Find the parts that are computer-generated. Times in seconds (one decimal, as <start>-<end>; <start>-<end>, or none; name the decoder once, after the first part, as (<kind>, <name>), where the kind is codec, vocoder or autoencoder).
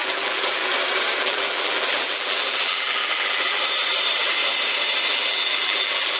0.0-0.6 (vocoder, BigVGAN v2); 1.2-3.6; 5.1-6.2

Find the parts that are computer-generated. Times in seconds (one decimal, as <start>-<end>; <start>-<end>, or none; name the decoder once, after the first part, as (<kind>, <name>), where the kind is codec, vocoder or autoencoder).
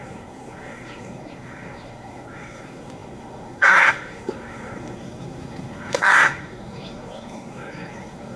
0.0-8.4 (codec, SNAC)